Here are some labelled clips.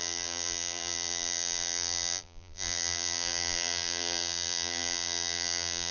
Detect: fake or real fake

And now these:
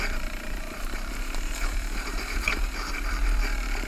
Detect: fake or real fake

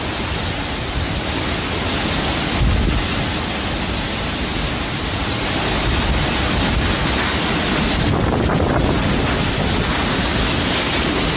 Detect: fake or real real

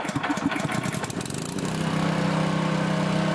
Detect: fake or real real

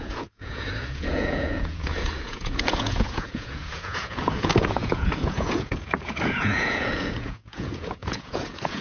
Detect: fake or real fake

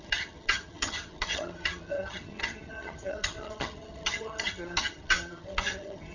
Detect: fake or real fake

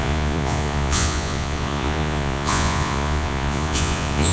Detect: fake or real fake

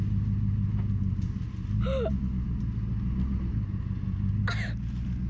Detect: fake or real real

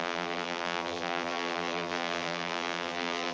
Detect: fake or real fake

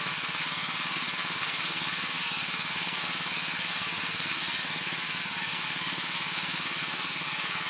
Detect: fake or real fake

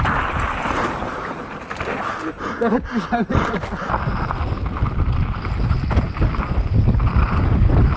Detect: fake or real real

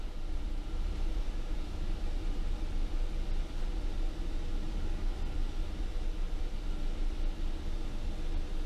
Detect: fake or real real